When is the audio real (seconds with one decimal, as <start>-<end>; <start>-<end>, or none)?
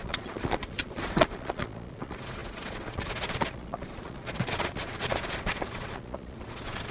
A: none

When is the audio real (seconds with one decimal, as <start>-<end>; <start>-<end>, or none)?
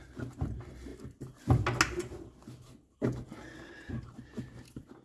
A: 0.0-5.0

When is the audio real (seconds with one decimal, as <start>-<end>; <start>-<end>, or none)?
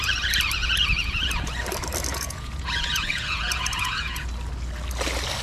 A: 0.0-0.6; 1.5-2.1; 4.3-5.4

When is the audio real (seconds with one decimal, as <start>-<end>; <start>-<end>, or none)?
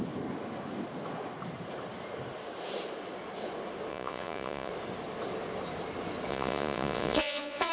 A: 0.0-3.9; 4.7-6.3